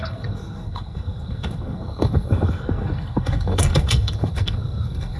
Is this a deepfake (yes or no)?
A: yes